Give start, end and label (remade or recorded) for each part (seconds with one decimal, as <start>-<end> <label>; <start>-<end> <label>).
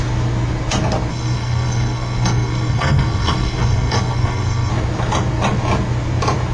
0.0-1.1 recorded; 1.1-4.7 remade; 4.7-6.5 recorded